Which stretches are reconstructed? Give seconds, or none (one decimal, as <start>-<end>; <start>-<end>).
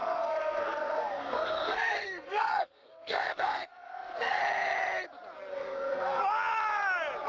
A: 0.0-4.4; 5.5-6.2